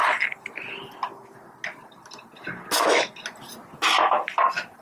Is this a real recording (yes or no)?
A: yes